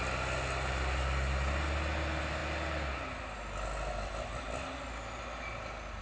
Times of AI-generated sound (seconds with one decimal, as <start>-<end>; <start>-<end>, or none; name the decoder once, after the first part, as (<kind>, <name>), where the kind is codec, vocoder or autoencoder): none